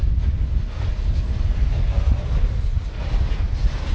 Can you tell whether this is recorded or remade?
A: recorded